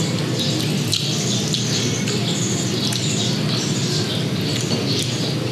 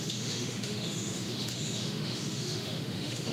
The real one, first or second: first